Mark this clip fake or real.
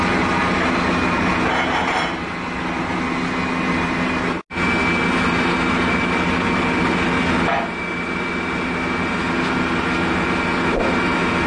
real